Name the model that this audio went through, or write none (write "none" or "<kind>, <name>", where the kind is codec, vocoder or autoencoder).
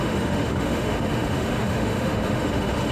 autoencoder, DAC-VAE